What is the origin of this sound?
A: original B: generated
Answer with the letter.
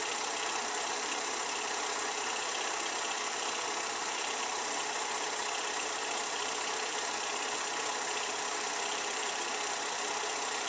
B